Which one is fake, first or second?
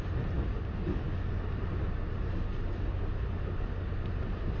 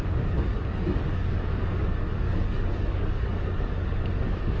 second